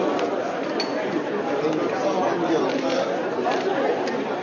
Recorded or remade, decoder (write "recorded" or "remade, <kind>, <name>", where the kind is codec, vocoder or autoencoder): recorded